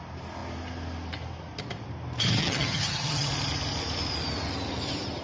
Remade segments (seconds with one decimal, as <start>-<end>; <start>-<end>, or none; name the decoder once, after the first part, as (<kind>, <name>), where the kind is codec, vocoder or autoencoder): 2.4-3.3 (vocoder, HiFi-GAN)